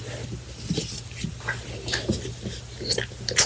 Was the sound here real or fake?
real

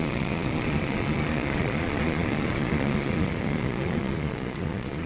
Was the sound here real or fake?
fake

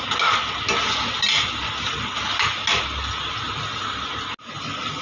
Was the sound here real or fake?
real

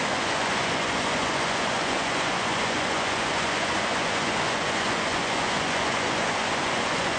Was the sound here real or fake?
fake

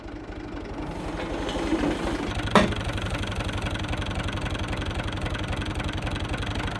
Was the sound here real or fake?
real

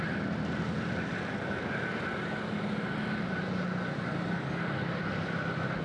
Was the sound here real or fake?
real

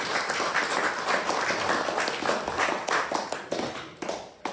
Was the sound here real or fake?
real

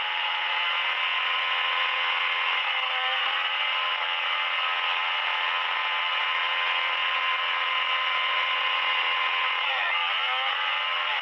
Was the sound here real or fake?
fake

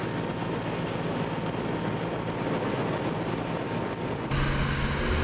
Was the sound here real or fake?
real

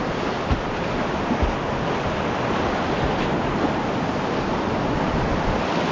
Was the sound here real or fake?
real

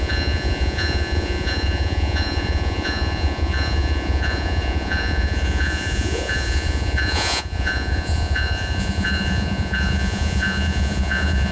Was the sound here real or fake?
fake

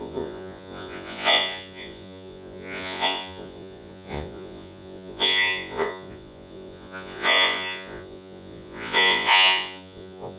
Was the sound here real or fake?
fake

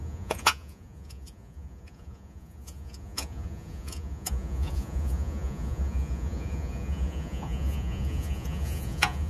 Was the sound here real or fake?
fake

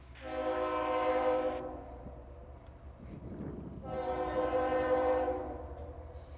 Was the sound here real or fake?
real